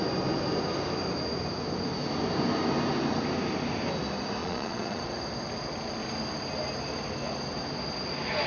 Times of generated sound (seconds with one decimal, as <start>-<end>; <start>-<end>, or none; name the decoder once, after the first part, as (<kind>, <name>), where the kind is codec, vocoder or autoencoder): 4.4-5.0 (vocoder, Vocos)

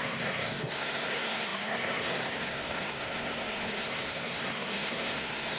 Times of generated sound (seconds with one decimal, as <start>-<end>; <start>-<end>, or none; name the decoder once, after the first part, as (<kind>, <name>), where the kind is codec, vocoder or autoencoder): 0.0-5.6 (codec, SNAC)

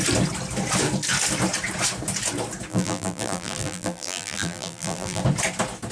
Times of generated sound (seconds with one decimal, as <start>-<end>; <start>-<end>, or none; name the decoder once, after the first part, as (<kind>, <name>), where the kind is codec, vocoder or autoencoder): 2.7-5.2 (vocoder, BigVGAN v2)

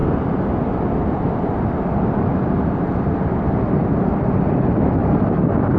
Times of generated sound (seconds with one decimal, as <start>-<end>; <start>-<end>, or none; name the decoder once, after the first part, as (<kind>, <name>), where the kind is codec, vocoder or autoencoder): 5.0-5.8 (vocoder, BigVGAN v2)

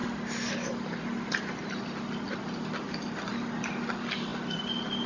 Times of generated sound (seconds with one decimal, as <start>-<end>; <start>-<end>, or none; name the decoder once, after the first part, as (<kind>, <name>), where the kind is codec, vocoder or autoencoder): none

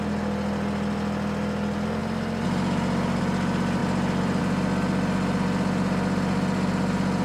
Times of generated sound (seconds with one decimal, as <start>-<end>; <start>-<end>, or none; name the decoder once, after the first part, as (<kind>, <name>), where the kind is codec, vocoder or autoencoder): none

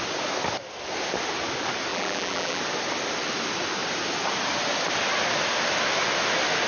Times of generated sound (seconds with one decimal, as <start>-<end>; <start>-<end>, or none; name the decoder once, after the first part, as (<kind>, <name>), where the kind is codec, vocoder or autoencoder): 1.9-2.6 (vocoder, BigVGAN v2)

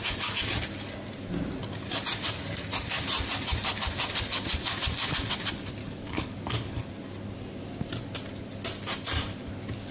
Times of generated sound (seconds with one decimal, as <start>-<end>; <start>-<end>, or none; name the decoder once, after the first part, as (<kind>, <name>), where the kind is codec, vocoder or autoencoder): 5.8-6.8 (codec, DAC)